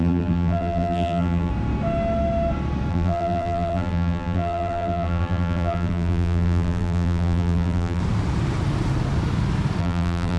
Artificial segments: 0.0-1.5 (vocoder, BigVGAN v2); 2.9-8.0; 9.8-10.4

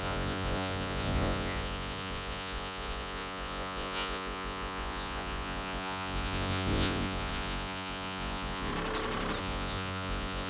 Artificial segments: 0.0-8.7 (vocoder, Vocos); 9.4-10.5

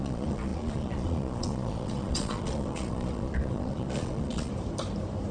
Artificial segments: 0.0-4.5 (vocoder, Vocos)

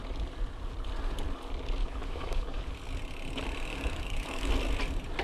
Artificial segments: 1.8-2.6 (codec, DAC); 3.7-4.5

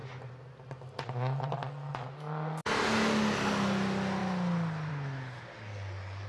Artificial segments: none

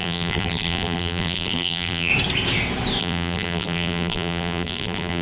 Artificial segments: 0.0-2.1 (vocoder, BigVGAN v2); 3.0-5.2